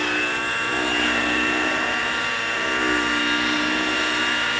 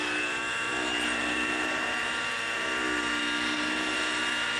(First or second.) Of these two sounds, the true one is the first